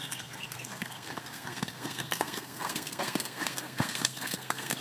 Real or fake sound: fake